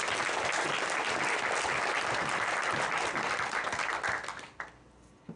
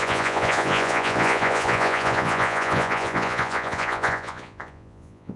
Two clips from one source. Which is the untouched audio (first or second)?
first